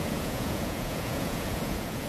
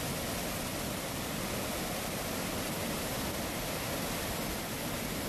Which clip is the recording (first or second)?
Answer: second